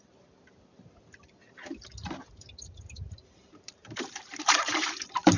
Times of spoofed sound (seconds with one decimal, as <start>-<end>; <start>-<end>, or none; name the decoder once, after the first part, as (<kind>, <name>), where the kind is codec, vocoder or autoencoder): 2.0-5.4 (vocoder, BigVGAN v2)